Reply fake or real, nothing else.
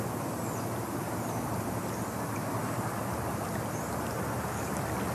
real